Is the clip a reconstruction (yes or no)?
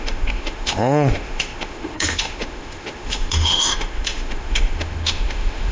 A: yes